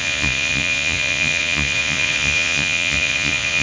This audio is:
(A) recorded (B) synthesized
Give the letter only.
B